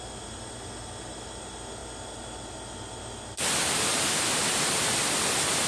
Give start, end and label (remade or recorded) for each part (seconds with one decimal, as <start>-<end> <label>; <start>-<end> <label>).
0.0-5.7 recorded